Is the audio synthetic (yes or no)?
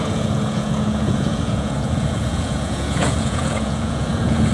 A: yes